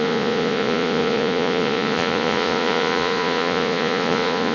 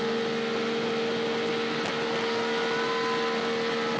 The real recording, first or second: second